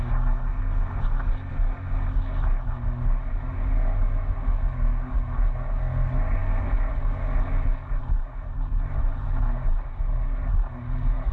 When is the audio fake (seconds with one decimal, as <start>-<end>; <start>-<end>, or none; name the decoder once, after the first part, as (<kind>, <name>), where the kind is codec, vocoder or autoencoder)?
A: 0.5-1.5 (vocoder, BigVGAN v2); 8.0-11.3